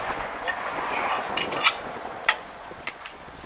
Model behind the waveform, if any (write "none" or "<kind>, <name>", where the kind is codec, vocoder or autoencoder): vocoder, Vocos